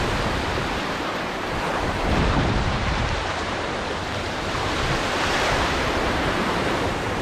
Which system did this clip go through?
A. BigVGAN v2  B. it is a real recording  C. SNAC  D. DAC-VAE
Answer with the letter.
A